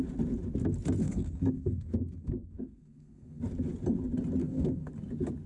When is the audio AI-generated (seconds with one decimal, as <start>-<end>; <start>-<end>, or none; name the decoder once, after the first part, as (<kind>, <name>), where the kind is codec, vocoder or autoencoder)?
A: 1.0-3.4 (codec, SNAC); 4.4-4.9